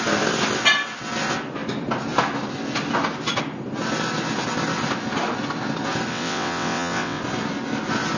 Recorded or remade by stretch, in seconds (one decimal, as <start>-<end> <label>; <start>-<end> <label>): 0.0-6.1 recorded; 6.1-7.2 remade; 7.2-8.2 recorded